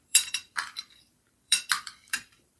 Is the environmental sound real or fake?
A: fake